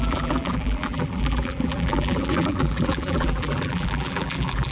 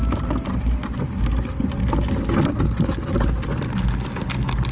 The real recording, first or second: second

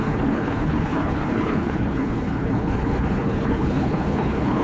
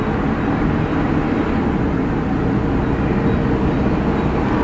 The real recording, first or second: second